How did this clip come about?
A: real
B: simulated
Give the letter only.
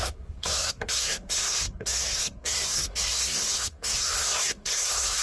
B